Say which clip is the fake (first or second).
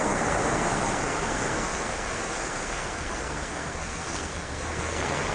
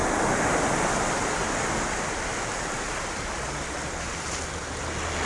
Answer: first